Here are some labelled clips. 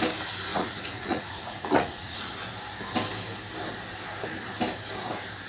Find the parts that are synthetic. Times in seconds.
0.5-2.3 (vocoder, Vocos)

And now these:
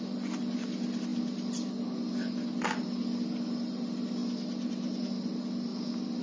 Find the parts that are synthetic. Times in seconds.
none

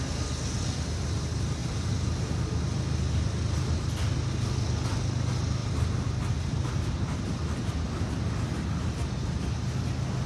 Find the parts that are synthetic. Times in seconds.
1.6-2.4 (vocoder, BigVGAN v2); 5.6-7.3

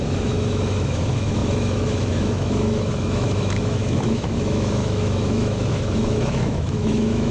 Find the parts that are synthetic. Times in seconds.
0.0-7.3 (autoencoder, DAC-VAE)

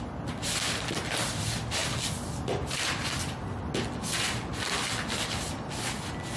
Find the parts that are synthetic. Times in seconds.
none

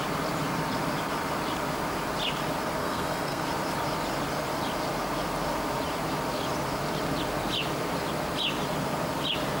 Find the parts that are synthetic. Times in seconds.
2.8-3.5 (codec, SNAC)

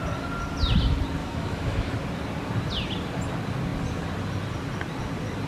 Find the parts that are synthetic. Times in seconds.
1.2-1.9 (autoencoder, DAC-VAE)